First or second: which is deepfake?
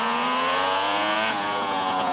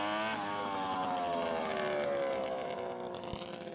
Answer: first